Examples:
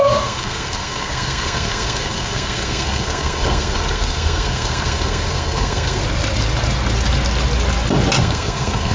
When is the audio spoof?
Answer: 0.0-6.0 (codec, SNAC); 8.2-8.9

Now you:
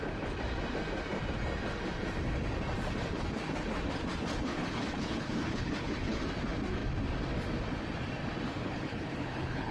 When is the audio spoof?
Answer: 4.3-6.2 (codec, HILCodec); 8.6-9.7

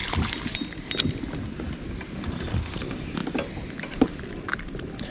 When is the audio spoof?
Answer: none

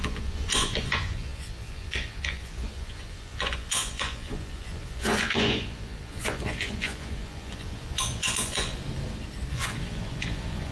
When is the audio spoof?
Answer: 0.0-8.8 (vocoder, Vocos); 9.5-10.7

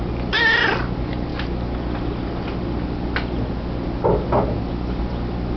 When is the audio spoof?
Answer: none

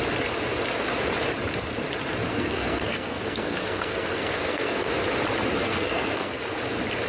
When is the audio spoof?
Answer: 2.3-4.9 (codec, SNAC); 5.6-6.4

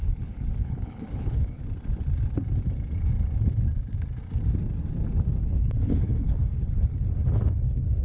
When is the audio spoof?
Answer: 0.0-1.6 (codec, HILCodec); 5.4-8.0